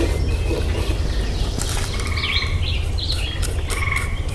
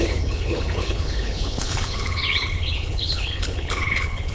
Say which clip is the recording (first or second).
first